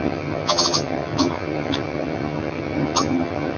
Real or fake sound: fake